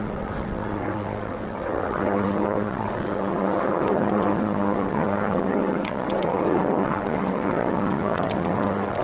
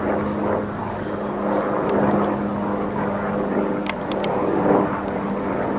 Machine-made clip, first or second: first